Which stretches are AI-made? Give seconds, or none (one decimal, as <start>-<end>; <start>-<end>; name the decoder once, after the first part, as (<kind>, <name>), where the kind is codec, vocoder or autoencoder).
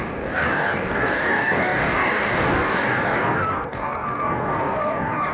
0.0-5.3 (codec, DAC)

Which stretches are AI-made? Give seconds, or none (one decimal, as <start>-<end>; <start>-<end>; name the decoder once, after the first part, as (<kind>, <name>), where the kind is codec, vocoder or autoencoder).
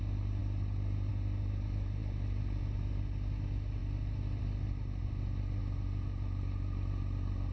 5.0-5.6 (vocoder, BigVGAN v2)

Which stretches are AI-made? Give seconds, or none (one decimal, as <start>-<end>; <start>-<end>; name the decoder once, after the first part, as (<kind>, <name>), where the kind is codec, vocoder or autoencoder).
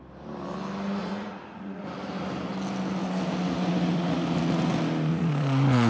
1.0-1.8 (vocoder, Vocos); 5.1-5.9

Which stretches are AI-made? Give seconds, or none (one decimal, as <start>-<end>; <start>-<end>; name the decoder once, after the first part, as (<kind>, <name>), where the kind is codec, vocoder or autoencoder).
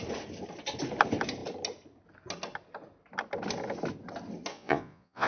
4.5-5.3 (vocoder, Vocos)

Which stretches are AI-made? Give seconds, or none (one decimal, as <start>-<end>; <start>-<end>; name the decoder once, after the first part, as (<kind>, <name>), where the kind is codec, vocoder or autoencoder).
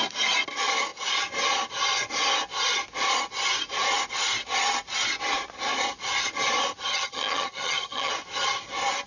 6.9-8.1 (vocoder, HiFi-GAN)